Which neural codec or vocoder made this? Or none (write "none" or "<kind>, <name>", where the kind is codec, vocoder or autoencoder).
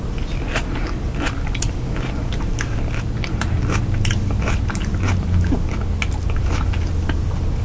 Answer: none